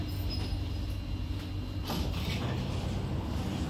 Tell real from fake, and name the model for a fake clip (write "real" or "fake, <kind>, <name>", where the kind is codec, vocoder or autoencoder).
real